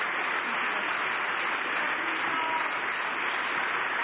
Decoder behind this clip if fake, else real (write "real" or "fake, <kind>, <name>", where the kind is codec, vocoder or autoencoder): real